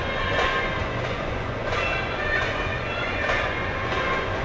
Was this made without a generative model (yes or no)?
no